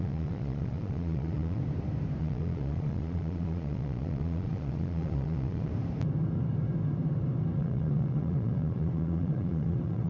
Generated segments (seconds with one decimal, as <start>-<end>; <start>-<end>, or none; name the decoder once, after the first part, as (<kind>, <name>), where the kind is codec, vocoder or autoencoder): 0.0-1.6 (vocoder, Vocos); 2.2-5.7; 7.6-10.1